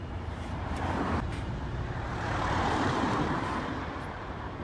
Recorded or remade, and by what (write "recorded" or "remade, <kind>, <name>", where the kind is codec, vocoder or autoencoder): remade, vocoder, BigVGAN v2